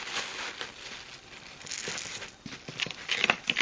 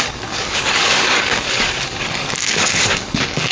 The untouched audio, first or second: first